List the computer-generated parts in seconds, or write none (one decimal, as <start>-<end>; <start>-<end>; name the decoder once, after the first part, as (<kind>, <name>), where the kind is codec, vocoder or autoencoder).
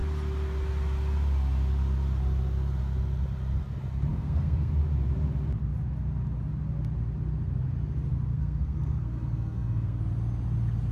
4.1-4.7 (codec, SNAC); 8.3-10.0